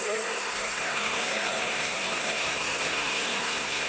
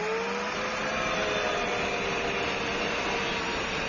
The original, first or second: second